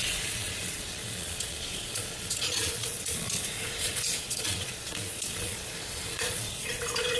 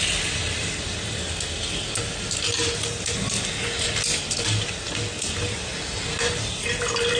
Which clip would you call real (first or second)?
second